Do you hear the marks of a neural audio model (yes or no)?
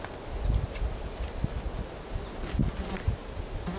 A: no